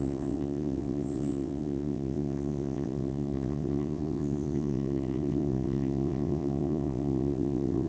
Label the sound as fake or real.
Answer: fake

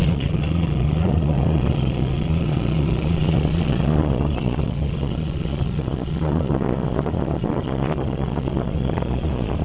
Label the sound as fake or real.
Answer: fake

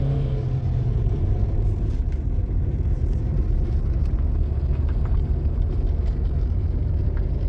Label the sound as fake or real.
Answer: real